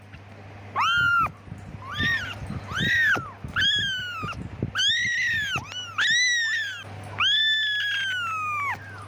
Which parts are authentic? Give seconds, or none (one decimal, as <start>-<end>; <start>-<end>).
0.0-9.1